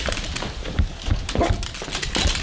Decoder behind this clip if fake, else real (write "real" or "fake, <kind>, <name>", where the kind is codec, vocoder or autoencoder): real